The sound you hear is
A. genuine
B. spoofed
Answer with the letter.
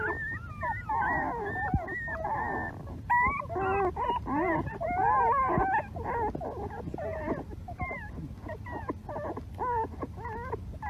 A